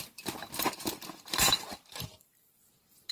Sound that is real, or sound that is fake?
fake